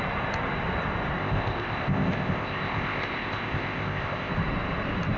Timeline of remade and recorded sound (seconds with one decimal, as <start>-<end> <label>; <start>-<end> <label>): 0.0-1.2 recorded; 1.2-4.3 remade; 4.3-5.2 recorded